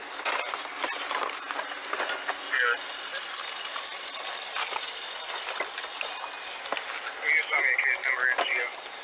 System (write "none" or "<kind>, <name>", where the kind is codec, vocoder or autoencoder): none